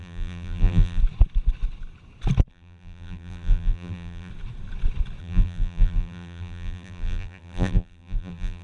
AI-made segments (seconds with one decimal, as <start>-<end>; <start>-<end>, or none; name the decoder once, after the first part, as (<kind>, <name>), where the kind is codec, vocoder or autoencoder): 0.0-1.0 (vocoder, BigVGAN v2); 2.5-4.3; 5.2-8.6